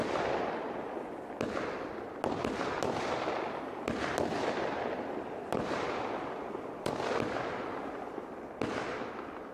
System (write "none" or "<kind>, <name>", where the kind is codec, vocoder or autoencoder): none